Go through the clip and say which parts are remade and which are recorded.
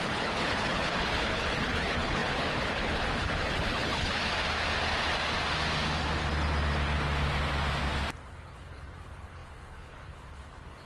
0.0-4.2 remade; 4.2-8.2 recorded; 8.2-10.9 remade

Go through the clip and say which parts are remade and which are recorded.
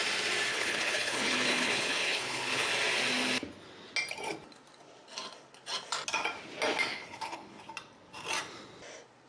0.0-0.5 recorded; 0.5-2.7 remade; 2.7-6.9 recorded; 6.9-7.6 remade; 7.6-9.3 recorded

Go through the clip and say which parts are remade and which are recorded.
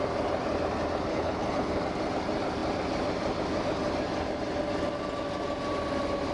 0.0-1.1 recorded; 1.1-1.7 remade; 1.7-6.3 recorded